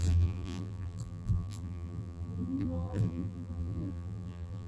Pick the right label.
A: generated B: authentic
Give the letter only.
A